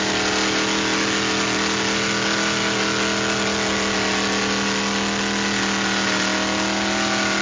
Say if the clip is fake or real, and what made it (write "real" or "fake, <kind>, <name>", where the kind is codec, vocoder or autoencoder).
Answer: real